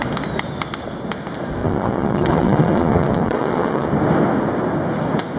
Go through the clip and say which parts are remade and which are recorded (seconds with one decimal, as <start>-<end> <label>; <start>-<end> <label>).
0.0-1.6 recorded; 1.6-3.9 remade; 3.9-5.4 recorded